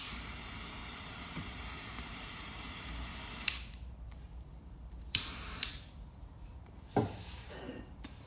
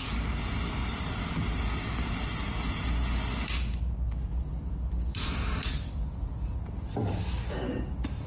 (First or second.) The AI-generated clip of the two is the first